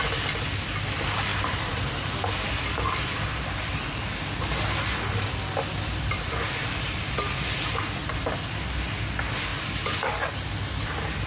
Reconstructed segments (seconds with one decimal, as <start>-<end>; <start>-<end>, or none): 1.3-4.0; 9.5-10.5